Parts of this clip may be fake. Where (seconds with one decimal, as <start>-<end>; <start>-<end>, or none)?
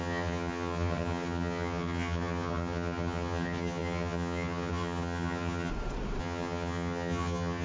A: 0.0-5.7; 6.2-7.6